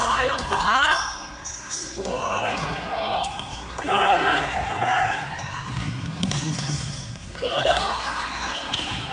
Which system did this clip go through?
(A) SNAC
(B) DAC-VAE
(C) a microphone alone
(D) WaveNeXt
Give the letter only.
A